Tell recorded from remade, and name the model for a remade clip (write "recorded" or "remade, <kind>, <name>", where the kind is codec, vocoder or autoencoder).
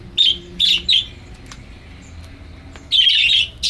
recorded